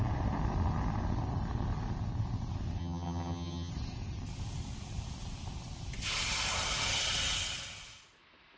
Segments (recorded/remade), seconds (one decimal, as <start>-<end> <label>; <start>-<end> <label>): 0.0-2.8 recorded; 2.8-3.7 remade; 3.7-8.6 recorded